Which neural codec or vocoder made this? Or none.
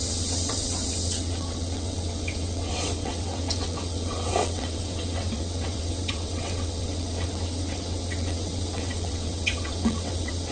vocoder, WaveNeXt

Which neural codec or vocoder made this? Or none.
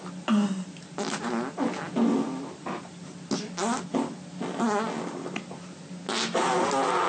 none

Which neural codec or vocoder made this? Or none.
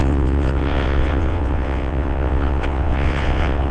vocoder, WaveNeXt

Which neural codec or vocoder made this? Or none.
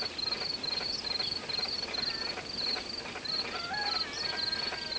none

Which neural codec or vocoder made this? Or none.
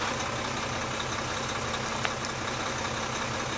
none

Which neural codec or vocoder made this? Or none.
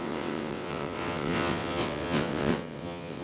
vocoder, WaveNeXt